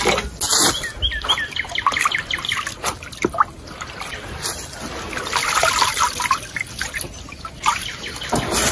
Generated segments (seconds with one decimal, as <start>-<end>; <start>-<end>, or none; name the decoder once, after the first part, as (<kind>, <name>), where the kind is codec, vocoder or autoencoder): none